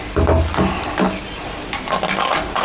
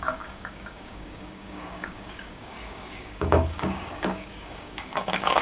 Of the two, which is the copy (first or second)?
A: second